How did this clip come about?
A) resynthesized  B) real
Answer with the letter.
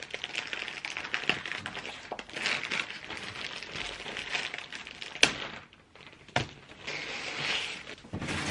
B